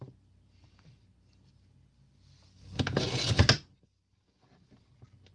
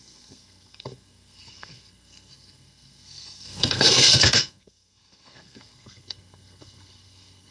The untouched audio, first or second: first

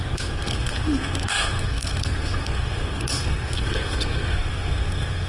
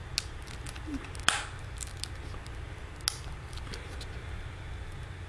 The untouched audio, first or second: second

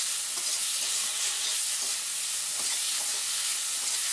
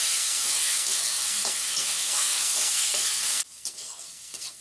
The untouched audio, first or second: first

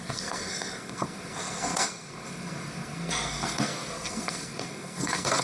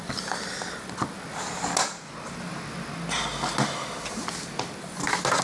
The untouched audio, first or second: second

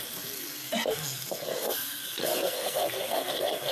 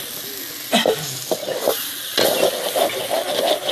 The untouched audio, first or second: second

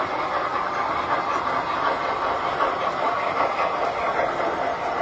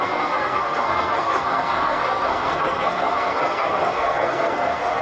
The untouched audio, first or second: first